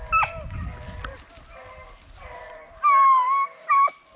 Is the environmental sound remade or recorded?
recorded